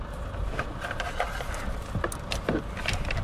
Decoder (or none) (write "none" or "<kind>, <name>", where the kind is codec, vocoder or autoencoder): none